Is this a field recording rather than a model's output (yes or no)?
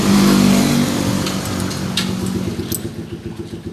yes